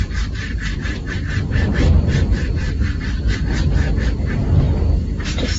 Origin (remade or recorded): remade